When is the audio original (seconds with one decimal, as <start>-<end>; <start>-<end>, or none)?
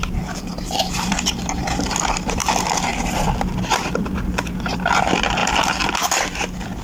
none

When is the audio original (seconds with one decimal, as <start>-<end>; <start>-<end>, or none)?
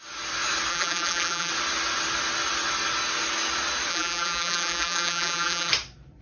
0.0-0.7; 1.5-3.9; 5.7-6.2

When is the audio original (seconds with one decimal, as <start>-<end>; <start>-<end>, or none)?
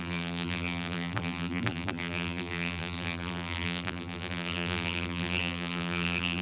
none